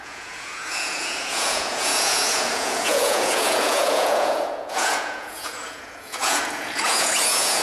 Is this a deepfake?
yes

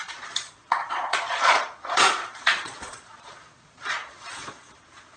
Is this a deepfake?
yes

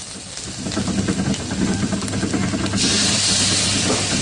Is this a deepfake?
no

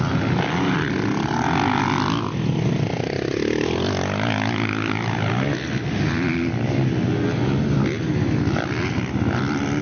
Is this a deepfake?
no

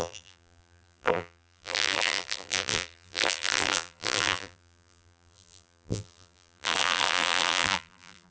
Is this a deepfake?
yes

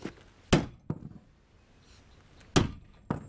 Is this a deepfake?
no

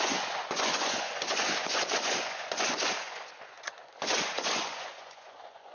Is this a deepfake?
yes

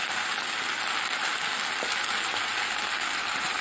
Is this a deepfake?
no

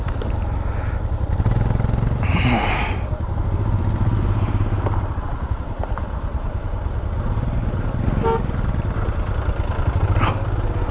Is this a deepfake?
no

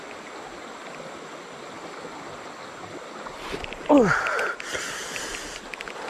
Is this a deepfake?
no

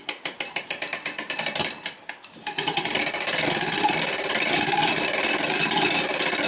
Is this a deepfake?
no